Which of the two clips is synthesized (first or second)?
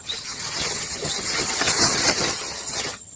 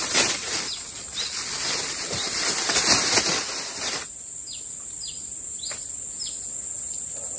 first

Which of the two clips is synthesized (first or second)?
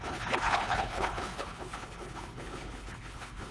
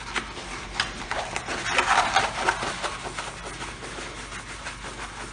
first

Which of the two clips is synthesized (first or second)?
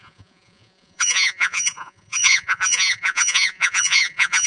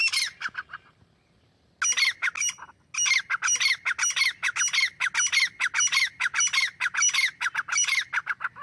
first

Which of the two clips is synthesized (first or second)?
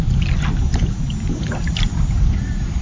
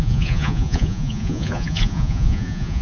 second